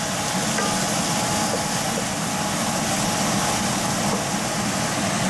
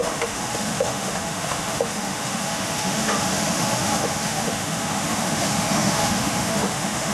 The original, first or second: first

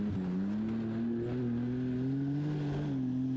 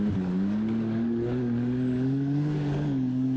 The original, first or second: first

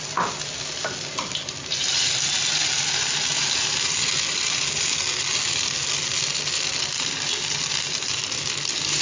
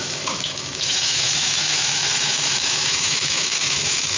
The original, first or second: first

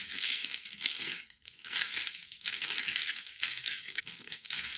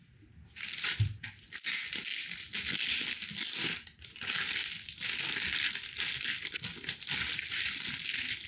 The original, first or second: second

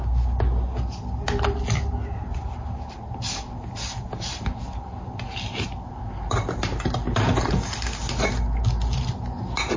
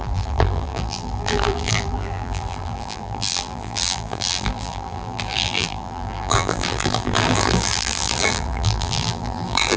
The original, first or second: first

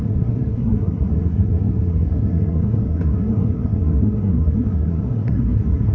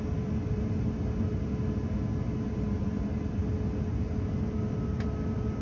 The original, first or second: second